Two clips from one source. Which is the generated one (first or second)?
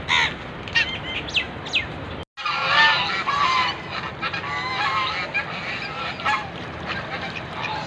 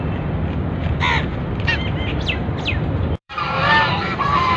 second